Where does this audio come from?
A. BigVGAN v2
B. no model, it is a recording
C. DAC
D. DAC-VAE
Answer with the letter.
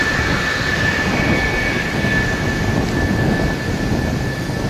B